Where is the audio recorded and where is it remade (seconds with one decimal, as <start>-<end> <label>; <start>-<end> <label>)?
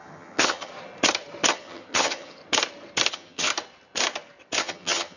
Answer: 0.0-0.7 remade; 0.7-1.5 recorded; 1.5-2.4 remade; 2.4-3.1 recorded; 3.1-3.5 remade; 3.5-4.6 recorded; 4.6-5.2 remade